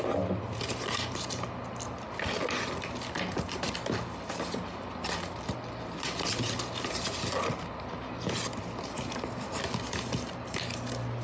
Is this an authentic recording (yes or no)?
yes